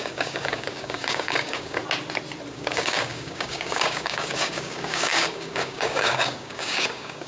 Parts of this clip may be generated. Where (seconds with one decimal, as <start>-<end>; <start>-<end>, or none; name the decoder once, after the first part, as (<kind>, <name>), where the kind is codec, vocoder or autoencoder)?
0.0-1.8 (codec, DAC); 2.5-7.3